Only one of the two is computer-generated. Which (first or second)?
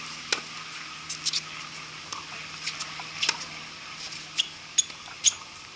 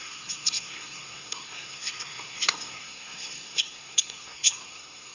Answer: second